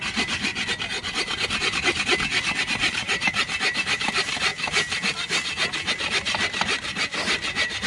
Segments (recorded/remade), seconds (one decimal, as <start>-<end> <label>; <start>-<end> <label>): 0.0-0.5 remade; 0.5-2.6 recorded; 2.6-4.5 remade; 4.5-5.9 recorded; 5.9-7.9 remade